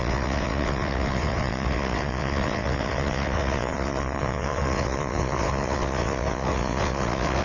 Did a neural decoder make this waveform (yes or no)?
yes